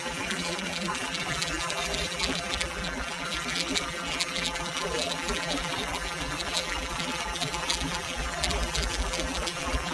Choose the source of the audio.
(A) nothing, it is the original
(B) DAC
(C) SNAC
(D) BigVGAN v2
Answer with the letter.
D